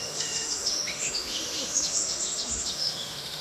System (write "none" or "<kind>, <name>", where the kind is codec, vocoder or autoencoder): autoencoder, DAC-VAE